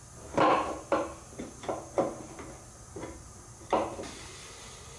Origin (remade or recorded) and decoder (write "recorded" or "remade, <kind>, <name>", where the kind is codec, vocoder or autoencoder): recorded